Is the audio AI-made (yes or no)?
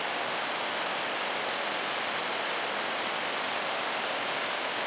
no